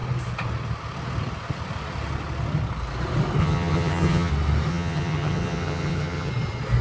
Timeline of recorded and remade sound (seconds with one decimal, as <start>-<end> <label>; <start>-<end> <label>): 0.0-3.4 recorded; 3.4-4.3 remade; 4.3-4.7 recorded; 4.7-6.3 remade; 6.3-6.8 recorded